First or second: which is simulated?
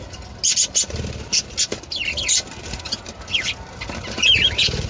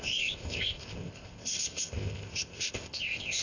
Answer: second